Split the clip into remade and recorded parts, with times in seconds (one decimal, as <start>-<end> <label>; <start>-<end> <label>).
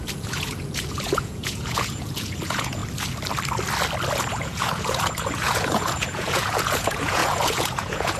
0.0-2.8 remade; 2.8-4.2 recorded; 4.2-8.2 remade